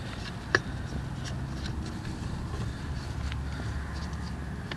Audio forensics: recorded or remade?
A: recorded